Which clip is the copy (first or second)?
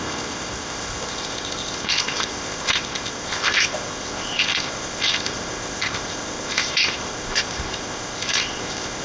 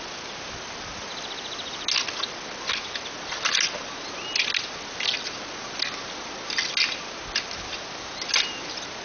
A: first